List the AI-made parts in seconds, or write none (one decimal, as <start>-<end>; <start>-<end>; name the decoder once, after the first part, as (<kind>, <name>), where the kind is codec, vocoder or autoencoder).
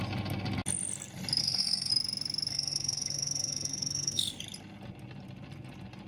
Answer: 1.4-1.9 (codec, SNAC); 2.5-4.4